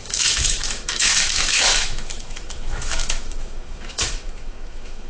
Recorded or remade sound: remade